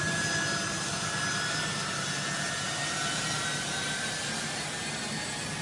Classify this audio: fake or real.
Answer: real